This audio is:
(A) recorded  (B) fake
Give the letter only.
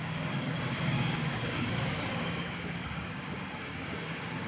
B